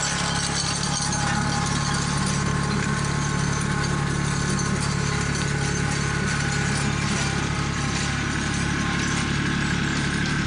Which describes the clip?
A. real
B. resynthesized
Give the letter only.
A